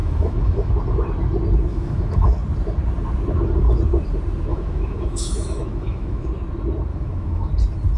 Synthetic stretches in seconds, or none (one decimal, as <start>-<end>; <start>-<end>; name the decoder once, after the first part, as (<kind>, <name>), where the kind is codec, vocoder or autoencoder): 0.0-0.7 (autoencoder, DAC-VAE); 1.7-2.3; 4.5-6.3; 6.9-7.5